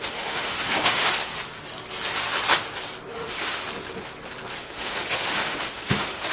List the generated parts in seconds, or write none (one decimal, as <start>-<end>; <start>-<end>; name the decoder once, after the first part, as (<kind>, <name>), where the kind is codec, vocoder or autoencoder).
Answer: 0.0-1.0 (autoencoder, DAC-VAE); 3.1-3.6; 4.6-6.3